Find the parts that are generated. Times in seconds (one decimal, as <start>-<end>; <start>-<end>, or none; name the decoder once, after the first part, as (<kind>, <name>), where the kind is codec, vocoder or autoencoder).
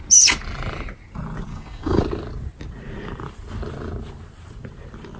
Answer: 1.5-2.0 (codec, DAC)